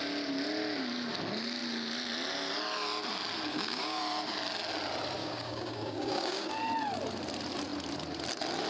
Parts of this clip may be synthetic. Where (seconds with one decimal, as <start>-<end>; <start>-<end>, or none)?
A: 3.5-4.0; 5.2-6.5